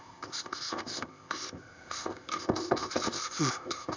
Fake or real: fake